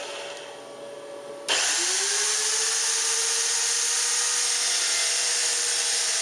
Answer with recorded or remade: recorded